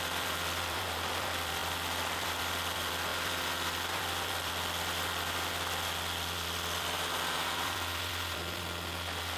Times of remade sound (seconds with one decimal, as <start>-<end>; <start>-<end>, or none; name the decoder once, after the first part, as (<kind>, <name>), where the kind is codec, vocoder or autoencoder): 0.0-9.4 (vocoder, BigVGAN v2)